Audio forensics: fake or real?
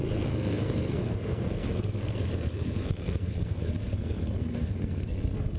fake